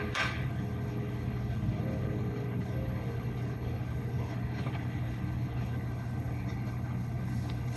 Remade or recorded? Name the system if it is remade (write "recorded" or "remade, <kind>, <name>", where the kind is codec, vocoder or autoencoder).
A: remade, codec, HILCodec